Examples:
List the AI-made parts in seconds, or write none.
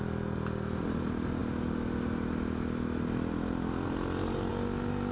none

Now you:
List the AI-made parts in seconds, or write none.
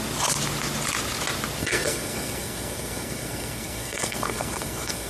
1.6-5.1 (codec, SNAC)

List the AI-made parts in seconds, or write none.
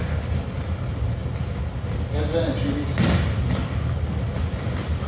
none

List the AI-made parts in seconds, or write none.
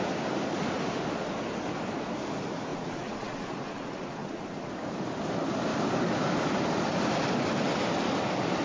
2.7-4.7 (vocoder, Vocos)